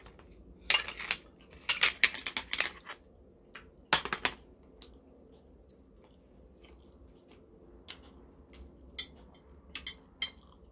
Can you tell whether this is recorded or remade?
recorded